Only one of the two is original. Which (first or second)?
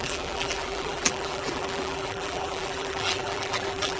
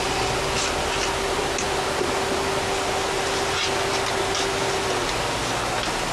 second